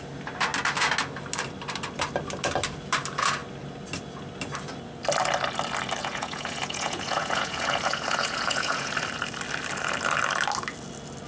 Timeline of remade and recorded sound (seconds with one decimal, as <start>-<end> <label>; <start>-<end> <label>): 0.0-6.0 recorded; 6.0-8.9 remade; 8.9-11.3 recorded